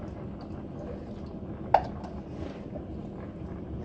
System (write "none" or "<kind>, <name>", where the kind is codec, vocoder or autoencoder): none